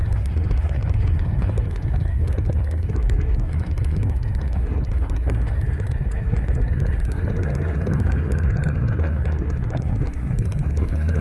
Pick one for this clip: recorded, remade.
remade